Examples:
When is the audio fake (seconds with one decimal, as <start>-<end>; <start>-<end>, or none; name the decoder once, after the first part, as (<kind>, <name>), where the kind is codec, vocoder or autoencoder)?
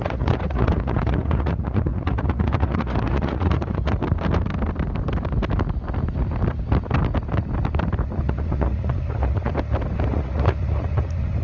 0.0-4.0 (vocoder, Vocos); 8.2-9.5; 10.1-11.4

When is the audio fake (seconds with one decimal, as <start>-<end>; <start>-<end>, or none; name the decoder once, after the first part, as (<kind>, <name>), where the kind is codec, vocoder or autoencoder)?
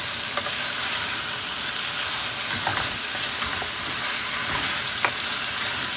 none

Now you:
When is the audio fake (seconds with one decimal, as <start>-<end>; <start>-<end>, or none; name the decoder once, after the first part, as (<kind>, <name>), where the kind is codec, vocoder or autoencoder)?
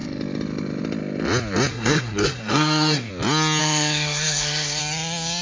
1.7-3.1 (codec, SNAC); 3.6-4.8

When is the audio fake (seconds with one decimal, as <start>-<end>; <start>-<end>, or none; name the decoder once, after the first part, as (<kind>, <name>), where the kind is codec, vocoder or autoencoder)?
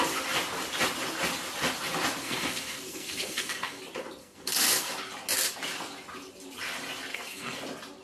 2.2-3.8 (codec, SNAC); 4.2-4.9; 7.1-7.6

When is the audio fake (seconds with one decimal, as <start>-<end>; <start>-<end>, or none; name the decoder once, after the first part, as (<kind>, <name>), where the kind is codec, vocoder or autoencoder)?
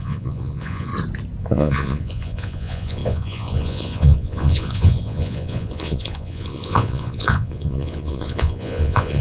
0.0-0.9 (vocoder, Vocos); 1.4-9.2